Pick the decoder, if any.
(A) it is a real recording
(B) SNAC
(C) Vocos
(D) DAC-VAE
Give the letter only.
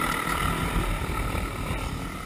A